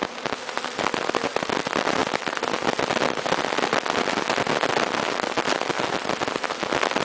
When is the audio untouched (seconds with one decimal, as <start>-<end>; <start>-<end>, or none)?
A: 0.0-7.0